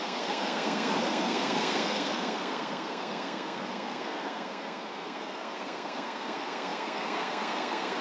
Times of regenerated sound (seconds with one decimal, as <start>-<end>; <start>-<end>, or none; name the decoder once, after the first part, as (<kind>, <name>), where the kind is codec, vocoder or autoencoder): 0.0-8.0 (codec, SNAC)